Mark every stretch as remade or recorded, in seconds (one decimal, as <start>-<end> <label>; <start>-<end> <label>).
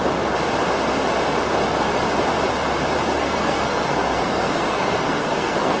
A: 0.0-3.2 recorded; 3.2-5.8 remade